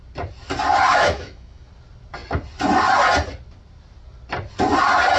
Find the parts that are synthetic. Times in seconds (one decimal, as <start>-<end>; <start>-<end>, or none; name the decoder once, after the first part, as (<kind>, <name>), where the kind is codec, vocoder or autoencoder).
0.9-1.7 (autoencoder, DAC-VAE)